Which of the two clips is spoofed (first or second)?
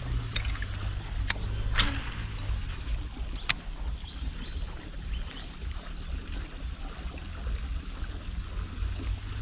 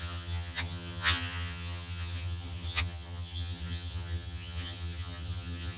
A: second